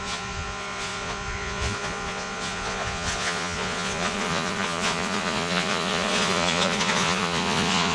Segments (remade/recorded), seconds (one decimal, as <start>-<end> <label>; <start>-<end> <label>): 0.0-7.9 remade